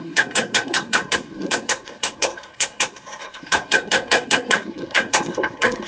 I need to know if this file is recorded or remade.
remade